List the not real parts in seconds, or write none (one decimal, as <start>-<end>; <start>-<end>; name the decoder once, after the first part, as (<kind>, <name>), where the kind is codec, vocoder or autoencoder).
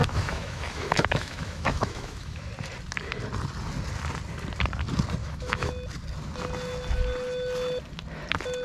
0.0-2.5 (autoencoder, DAC-VAE); 5.2-5.7